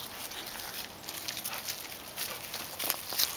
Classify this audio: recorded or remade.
recorded